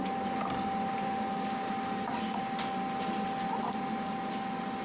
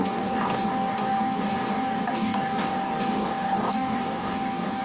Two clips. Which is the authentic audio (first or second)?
first